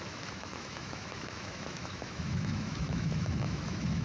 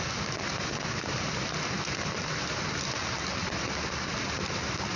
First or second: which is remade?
first